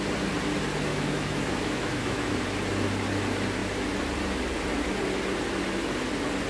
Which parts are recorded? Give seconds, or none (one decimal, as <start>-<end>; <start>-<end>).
0.0-0.9; 2.3-6.5